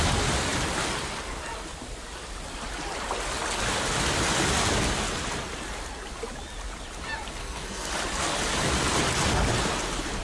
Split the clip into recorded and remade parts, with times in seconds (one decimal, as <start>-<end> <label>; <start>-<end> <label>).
0.0-7.4 recorded; 7.4-7.9 remade; 7.9-10.2 recorded